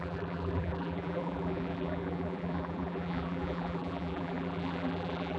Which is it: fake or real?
fake